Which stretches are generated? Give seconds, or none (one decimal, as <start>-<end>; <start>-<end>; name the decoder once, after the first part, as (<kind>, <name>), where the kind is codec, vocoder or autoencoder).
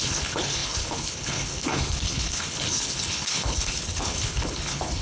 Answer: 0.0-5.0 (codec, HILCodec)